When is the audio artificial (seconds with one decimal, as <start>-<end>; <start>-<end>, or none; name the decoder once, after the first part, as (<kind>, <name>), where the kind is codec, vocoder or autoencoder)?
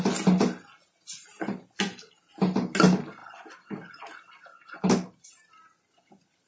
none